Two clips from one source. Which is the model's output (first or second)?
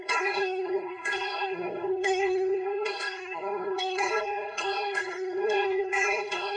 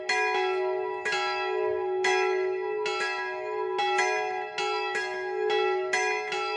first